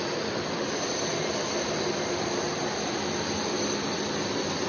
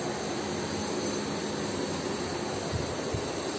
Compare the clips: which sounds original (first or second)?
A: second